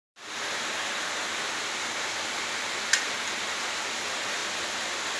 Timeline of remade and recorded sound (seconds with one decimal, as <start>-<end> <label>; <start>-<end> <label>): 0.0-5.2 recorded